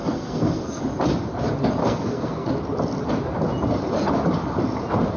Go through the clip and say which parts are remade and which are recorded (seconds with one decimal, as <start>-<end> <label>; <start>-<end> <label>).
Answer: 0.0-0.8 remade; 0.8-1.8 recorded; 1.8-2.5 remade; 2.5-5.2 recorded